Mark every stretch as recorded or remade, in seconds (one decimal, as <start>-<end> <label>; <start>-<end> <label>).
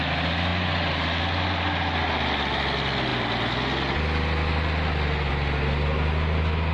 0.0-6.7 recorded